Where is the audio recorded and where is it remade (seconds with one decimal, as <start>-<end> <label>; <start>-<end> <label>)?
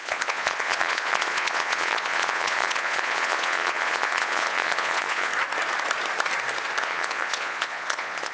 0.0-5.3 remade; 5.3-6.8 recorded; 6.8-8.3 remade